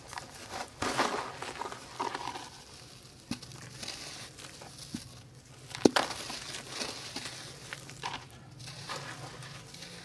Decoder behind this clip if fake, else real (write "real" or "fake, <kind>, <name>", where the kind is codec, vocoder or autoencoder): real